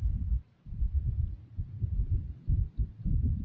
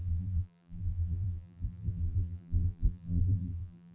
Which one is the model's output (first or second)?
second